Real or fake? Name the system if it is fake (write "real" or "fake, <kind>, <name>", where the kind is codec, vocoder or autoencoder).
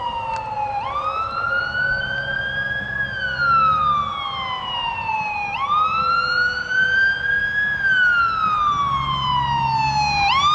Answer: real